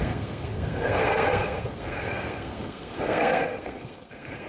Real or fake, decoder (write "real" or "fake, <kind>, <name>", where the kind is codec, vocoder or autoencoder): fake, codec, SNAC